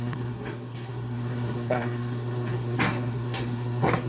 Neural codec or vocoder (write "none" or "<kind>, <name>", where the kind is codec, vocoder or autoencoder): codec, SNAC